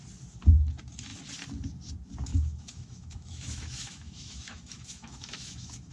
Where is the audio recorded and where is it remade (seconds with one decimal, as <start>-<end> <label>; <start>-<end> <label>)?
0.0-2.3 recorded; 2.3-5.9 remade